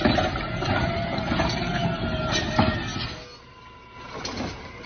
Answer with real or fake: real